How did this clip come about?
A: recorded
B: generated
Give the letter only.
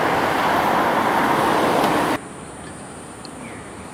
A